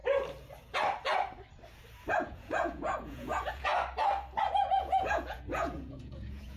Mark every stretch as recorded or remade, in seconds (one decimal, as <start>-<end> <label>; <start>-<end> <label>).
0.0-2.1 recorded; 2.1-3.7 remade; 3.7-4.4 recorded; 4.4-6.6 remade